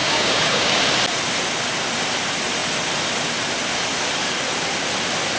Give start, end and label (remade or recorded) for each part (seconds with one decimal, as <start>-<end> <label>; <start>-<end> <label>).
0.0-0.8 remade; 0.8-5.4 recorded